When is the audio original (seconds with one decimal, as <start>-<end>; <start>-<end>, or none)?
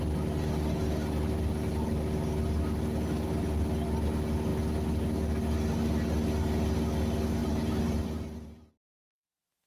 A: 0.0-7.4; 8.7-9.7